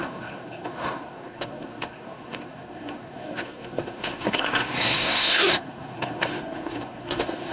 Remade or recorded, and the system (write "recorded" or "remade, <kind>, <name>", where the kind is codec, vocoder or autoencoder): remade, codec, SNAC